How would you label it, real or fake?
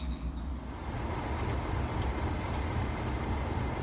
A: real